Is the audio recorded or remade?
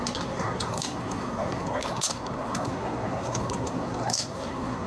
remade